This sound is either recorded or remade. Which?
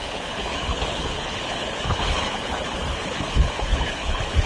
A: remade